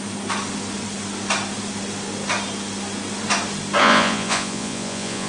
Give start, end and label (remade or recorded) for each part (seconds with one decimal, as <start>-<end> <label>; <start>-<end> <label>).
0.0-3.8 recorded; 3.8-5.3 remade